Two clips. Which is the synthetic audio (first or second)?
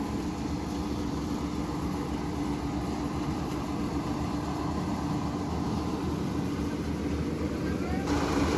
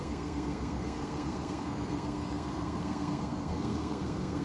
second